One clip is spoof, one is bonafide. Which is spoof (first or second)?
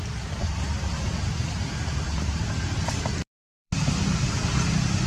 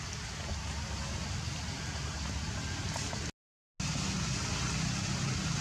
first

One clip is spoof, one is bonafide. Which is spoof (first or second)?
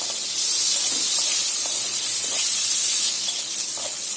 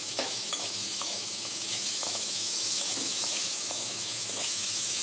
second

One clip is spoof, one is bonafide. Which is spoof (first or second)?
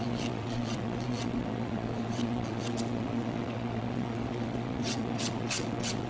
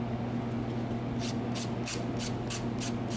first